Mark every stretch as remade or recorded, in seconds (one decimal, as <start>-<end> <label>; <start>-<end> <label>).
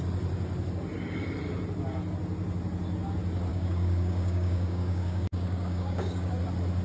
0.0-3.5 recorded; 3.5-6.3 remade; 6.3-6.8 recorded